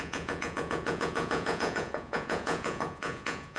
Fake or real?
fake